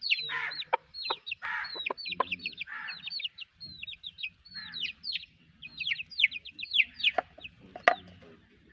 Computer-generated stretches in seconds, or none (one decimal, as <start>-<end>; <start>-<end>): 0.0-2.7; 4.1-5.6; 6.7-7.7